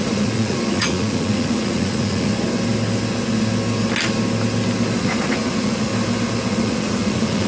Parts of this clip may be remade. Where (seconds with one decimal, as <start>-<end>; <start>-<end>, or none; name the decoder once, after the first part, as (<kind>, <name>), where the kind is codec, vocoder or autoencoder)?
0.0-2.3 (vocoder, Vocos); 5.0-5.9; 6.5-7.5